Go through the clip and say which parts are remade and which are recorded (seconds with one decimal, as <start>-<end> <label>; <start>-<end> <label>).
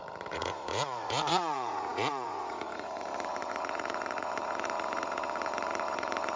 0.0-6.4 remade